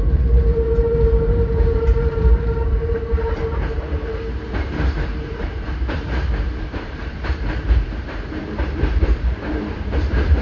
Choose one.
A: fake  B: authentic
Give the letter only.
A